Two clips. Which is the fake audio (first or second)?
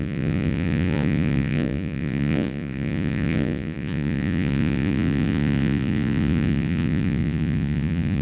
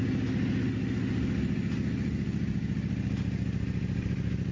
first